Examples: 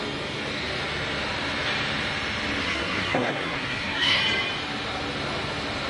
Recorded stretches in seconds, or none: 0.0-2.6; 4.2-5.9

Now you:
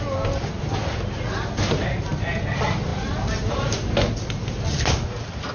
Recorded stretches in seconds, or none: 0.0-5.5

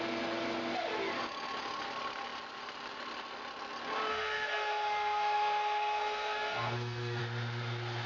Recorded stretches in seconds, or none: 0.0-4.1; 7.2-8.1

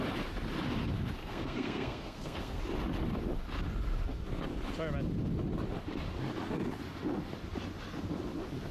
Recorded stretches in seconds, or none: 0.0-1.2; 2.6-8.7